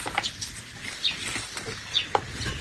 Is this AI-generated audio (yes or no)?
no